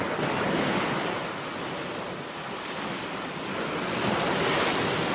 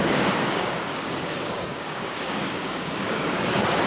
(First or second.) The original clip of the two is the first